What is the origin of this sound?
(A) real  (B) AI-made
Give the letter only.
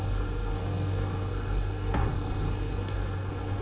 B